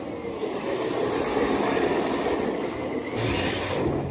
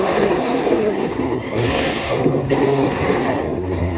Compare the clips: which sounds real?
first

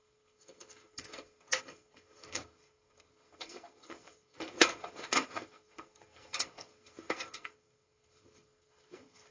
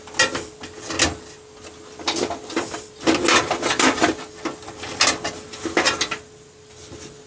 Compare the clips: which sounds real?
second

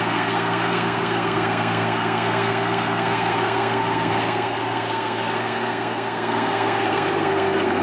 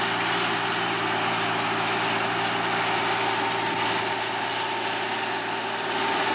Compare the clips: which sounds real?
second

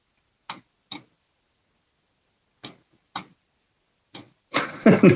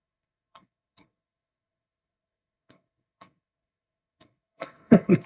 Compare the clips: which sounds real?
first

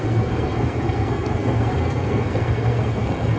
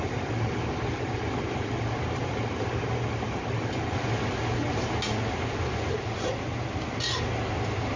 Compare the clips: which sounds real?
second